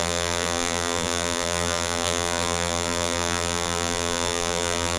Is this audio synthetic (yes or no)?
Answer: yes